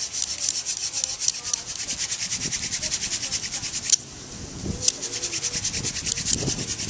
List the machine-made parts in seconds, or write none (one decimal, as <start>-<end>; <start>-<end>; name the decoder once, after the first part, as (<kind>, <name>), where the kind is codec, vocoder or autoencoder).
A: none